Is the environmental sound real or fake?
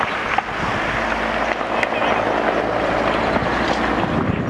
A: real